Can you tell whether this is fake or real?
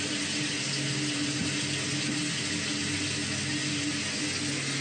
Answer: real